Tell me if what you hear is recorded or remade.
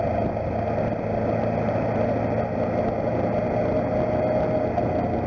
recorded